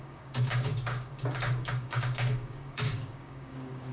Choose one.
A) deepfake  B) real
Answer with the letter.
A